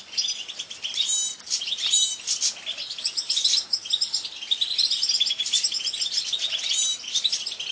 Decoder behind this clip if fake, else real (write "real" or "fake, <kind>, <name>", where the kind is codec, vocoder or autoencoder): real